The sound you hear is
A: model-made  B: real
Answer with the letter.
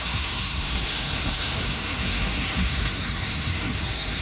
A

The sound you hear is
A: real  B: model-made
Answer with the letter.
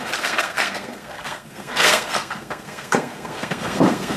B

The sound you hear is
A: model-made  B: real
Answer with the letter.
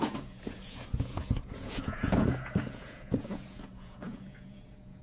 A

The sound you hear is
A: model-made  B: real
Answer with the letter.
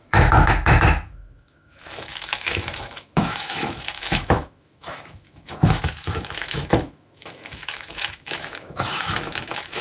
A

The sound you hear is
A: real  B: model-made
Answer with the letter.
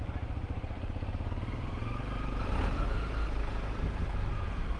A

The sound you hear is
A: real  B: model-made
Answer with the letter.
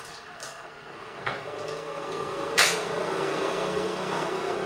B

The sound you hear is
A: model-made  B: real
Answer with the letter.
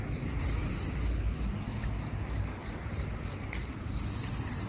B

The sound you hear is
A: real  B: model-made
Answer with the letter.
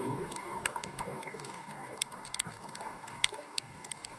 B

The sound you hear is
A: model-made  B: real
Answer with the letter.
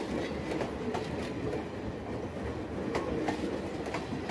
B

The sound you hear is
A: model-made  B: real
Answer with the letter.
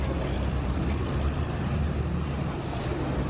B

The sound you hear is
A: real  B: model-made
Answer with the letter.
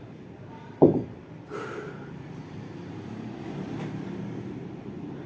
B